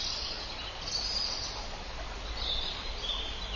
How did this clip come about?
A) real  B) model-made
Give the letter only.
A